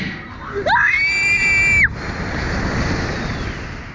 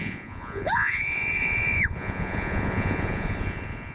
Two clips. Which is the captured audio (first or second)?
first